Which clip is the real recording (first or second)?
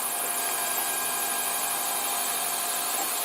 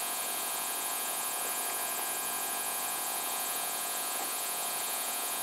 first